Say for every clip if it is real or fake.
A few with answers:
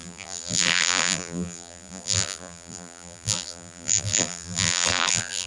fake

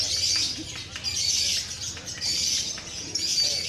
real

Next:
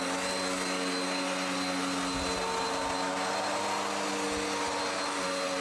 real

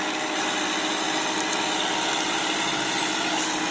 real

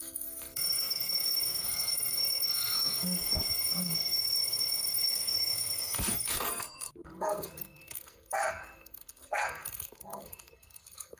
fake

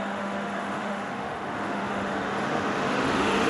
fake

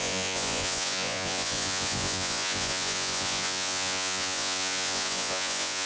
fake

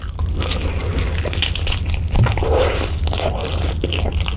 real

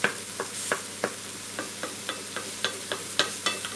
real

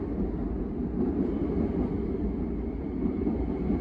real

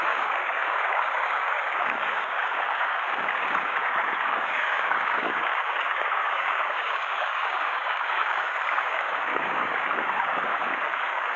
fake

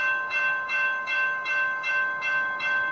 fake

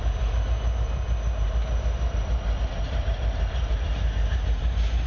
fake